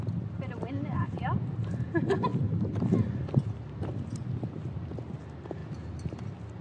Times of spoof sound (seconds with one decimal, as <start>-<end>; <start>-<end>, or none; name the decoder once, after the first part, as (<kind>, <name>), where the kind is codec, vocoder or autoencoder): none